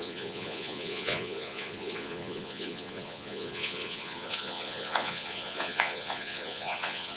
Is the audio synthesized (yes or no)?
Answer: yes